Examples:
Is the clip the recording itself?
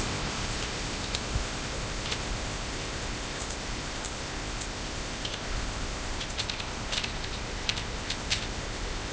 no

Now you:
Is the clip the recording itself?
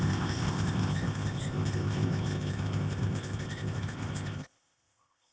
no